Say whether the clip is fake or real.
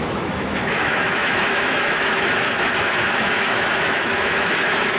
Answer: fake